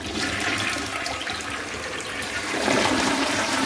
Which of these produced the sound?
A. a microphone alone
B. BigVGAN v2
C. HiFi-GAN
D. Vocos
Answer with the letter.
B